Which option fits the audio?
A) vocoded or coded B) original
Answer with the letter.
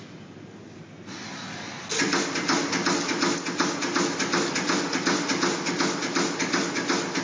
B